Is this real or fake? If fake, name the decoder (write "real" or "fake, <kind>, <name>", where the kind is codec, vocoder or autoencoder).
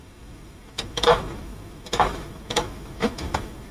fake, autoencoder, DAC-VAE